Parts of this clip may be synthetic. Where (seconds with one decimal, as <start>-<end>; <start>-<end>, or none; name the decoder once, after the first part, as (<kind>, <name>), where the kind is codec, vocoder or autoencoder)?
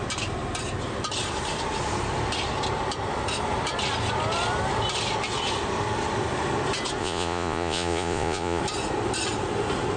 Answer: 7.0-8.6 (vocoder, Vocos)